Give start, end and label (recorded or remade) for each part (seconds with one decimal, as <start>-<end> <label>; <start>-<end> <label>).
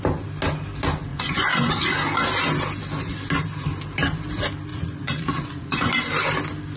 0.0-1.1 recorded; 1.1-1.7 remade; 1.7-4.7 recorded; 4.7-5.9 remade; 5.9-6.8 recorded